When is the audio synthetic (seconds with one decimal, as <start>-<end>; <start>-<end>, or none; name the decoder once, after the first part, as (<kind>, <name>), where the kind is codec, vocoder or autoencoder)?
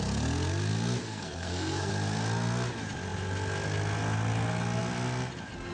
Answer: 1.0-1.9 (codec, SNAC)